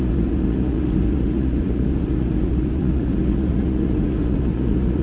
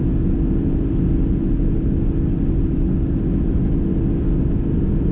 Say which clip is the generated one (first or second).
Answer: first